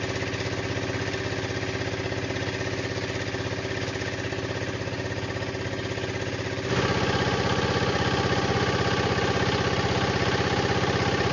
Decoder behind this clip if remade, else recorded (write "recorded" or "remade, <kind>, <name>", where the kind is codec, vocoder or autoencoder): recorded